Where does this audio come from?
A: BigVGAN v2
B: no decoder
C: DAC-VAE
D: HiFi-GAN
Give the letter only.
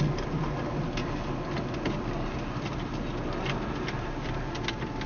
B